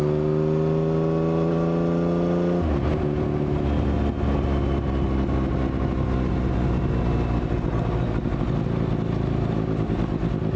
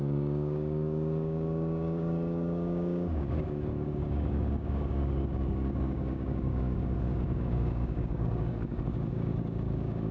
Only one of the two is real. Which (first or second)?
first